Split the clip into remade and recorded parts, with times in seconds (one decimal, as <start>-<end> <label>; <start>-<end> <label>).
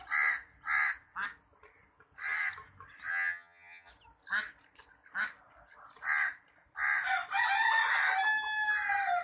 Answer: 0.0-3.1 recorded; 3.1-3.9 remade; 3.9-9.2 recorded